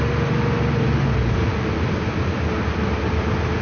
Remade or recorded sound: recorded